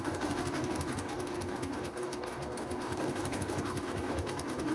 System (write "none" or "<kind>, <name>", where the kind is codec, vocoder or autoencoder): codec, DAC